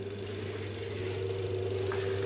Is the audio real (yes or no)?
yes